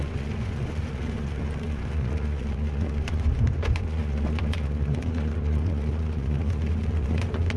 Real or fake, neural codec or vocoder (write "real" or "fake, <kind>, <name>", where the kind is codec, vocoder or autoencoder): fake, vocoder, Vocos